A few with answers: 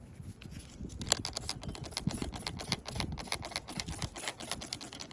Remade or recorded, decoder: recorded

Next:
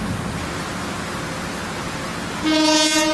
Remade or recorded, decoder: recorded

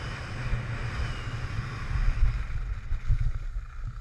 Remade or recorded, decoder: recorded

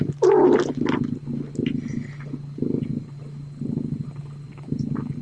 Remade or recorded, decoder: recorded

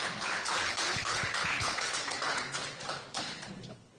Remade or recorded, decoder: remade, codec, HILCodec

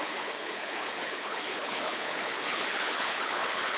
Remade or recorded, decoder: remade, codec, HILCodec